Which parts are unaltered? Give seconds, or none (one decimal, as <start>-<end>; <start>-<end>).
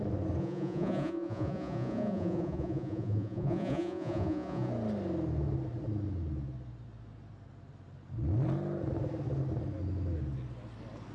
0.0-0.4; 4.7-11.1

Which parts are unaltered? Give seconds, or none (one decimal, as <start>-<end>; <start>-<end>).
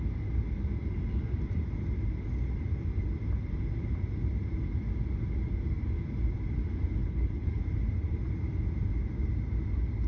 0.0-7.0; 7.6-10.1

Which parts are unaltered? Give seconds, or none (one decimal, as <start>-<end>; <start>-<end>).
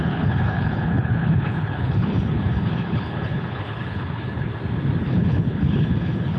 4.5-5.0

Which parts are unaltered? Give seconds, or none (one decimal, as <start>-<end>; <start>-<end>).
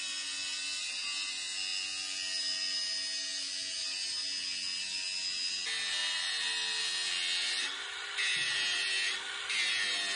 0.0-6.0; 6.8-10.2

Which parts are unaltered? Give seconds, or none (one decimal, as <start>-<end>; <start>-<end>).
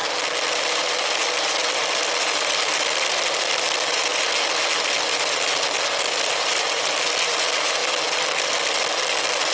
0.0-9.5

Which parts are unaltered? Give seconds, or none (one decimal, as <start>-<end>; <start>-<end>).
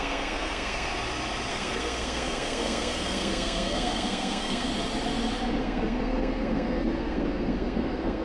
0.9-1.5; 4.7-5.6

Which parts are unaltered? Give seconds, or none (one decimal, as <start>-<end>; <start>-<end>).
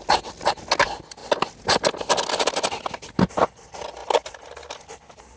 0.0-5.4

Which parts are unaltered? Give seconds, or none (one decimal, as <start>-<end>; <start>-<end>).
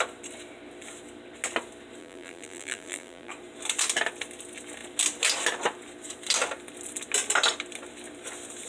0.0-2.0; 3.3-8.7